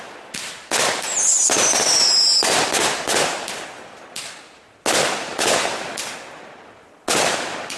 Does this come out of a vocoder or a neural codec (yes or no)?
no